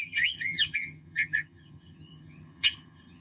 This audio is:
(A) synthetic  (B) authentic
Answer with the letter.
A